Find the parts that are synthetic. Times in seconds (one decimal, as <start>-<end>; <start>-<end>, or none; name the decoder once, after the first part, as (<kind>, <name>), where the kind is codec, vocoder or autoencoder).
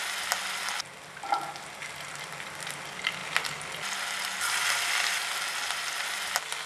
none